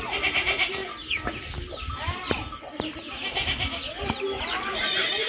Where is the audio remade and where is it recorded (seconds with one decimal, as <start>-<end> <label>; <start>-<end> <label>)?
0.0-0.8 remade; 0.8-1.7 recorded; 1.7-5.3 remade